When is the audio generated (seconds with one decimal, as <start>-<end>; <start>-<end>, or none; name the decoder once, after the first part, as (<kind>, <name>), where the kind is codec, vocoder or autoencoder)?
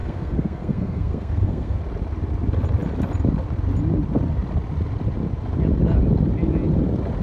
0.0-1.8 (codec, SNAC)